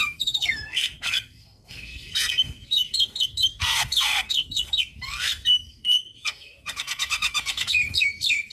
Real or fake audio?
fake